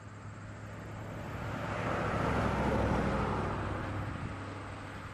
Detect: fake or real real